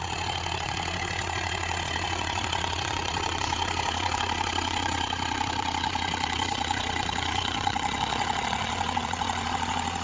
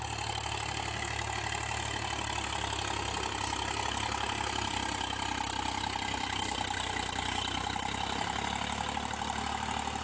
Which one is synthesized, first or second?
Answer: first